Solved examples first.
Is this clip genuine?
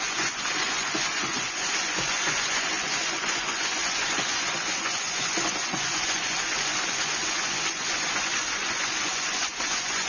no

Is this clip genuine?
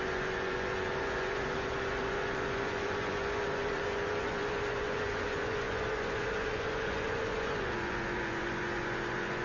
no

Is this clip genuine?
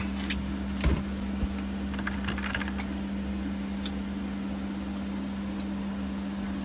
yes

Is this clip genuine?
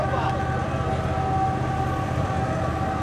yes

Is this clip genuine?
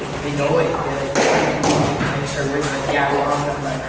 yes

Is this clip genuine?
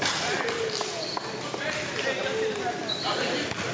yes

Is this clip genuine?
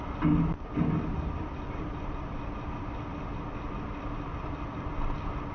yes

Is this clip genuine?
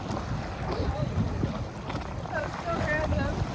yes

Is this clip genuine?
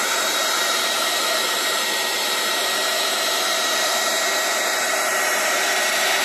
no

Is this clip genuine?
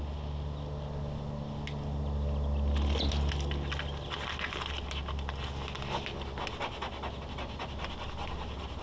yes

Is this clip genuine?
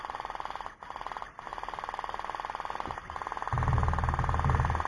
yes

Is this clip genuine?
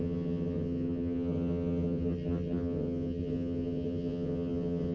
no